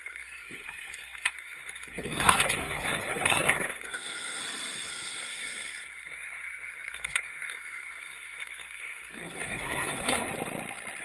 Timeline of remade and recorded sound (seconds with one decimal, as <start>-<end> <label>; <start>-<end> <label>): 0.0-4.4 remade; 4.4-4.9 recorded; 4.9-10.3 remade; 10.3-11.0 recorded